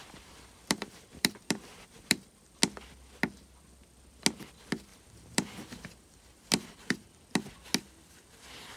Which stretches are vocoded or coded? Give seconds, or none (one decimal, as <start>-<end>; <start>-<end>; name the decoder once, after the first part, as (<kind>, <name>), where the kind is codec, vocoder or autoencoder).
0.0-2.6 (vocoder, BigVGAN v2); 4.9-7.1